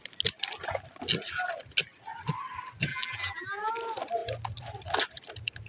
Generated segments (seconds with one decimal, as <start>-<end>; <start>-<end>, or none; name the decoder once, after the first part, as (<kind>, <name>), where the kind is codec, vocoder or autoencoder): 2.9-3.7 (vocoder, BigVGAN v2)